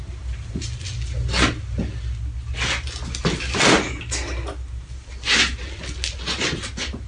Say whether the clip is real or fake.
real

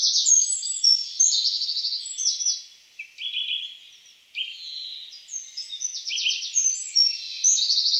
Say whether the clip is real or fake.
real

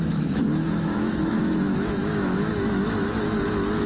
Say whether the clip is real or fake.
fake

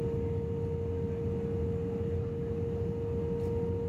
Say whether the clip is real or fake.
real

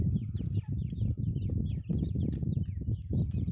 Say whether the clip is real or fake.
real